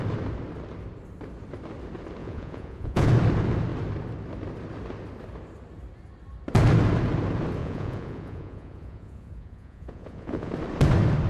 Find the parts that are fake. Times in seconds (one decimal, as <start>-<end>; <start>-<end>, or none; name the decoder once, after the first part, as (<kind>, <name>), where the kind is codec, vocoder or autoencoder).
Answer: 2.2-3.1 (vocoder, Vocos); 7.6-10.5